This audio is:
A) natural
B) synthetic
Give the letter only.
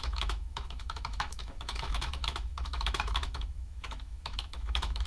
B